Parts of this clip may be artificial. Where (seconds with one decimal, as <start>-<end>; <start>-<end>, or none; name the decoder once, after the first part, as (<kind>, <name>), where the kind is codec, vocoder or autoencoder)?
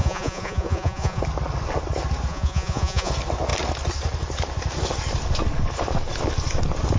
0.0-1.2 (vocoder, Vocos); 2.3-3.1